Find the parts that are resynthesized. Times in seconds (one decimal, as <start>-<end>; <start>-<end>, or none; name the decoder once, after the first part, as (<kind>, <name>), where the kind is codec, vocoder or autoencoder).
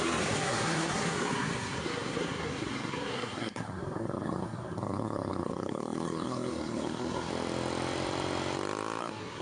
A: 0.0-7.3 (codec, SNAC); 9.0-9.4